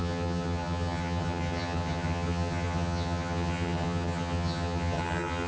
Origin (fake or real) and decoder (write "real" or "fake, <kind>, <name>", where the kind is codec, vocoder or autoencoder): fake, vocoder, HiFi-GAN